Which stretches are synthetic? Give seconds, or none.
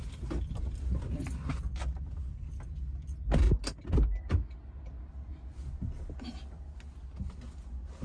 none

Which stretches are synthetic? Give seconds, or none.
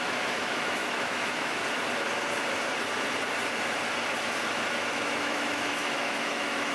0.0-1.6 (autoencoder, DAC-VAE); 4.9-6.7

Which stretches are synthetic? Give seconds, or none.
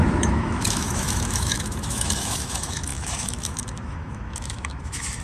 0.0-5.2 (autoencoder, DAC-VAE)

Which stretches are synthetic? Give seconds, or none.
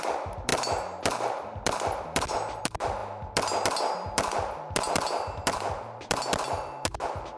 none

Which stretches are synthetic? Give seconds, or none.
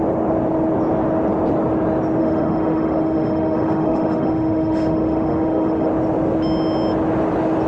2.2-5.9 (autoencoder, DAC-VAE)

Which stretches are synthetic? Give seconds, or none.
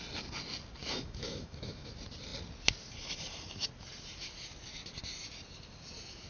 0.8-1.9 (autoencoder, DAC-VAE)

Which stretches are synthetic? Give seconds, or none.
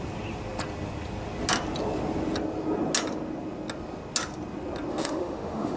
4.9-5.8 (autoencoder, DAC-VAE)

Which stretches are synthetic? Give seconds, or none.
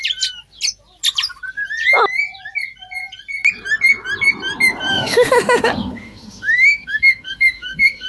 4.9-8.1 (autoencoder, DAC-VAE)